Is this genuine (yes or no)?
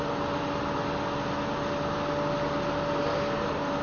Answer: yes